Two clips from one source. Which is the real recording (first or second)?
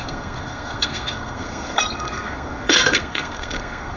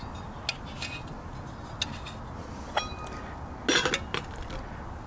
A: second